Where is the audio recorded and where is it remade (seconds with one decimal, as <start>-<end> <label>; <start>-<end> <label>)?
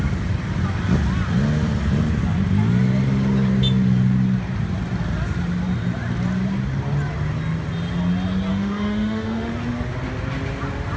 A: 0.0-8.5 recorded; 8.5-9.5 remade; 9.5-11.0 recorded